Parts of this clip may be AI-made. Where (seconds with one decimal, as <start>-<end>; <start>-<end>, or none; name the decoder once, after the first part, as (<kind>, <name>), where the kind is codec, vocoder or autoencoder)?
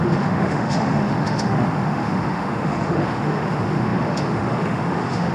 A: 0.0-5.3 (autoencoder, DAC-VAE)